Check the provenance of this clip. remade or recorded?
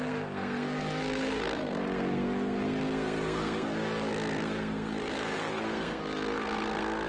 remade